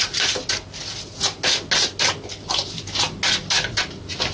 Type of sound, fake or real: real